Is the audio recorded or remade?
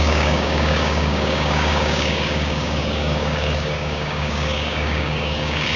remade